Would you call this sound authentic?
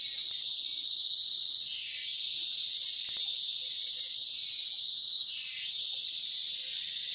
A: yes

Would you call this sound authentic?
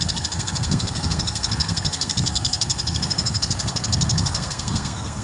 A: no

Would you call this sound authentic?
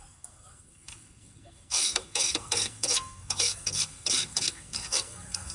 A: no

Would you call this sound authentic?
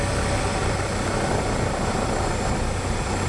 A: yes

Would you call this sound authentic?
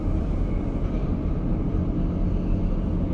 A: yes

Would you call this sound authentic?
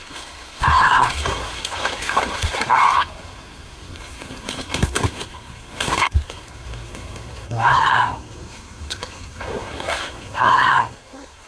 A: no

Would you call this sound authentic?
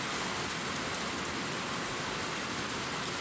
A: yes